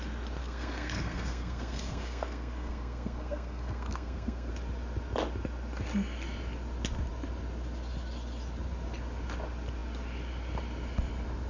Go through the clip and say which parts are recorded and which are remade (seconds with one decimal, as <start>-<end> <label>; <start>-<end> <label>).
0.0-0.4 recorded; 0.4-4.5 remade; 4.5-11.5 recorded